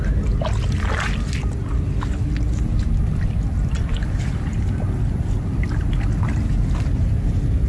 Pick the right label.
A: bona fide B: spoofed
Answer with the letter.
A